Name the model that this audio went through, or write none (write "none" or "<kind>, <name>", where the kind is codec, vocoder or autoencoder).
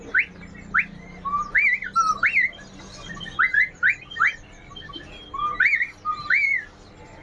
none